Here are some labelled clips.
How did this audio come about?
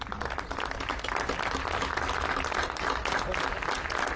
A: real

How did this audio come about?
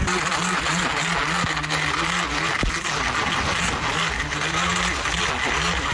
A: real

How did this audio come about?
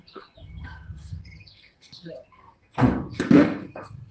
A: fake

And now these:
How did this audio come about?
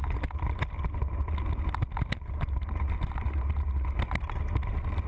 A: real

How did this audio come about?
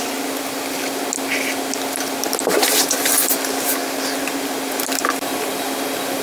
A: real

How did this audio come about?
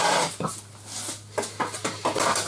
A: real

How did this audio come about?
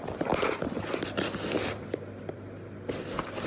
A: real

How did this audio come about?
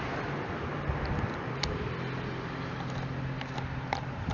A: real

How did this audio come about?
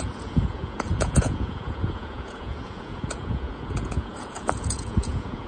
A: fake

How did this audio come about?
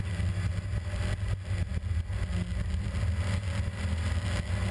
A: real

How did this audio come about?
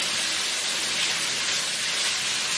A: real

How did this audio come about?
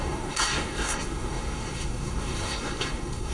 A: fake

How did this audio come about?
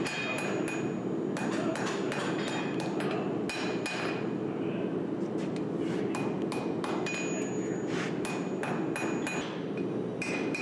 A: real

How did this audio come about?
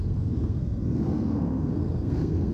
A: fake